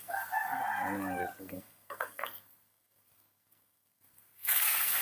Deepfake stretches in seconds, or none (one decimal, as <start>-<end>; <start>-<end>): 0.0-0.6; 1.4-5.0